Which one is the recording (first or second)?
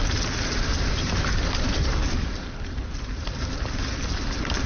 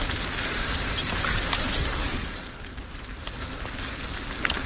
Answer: second